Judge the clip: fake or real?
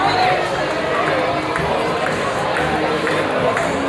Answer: real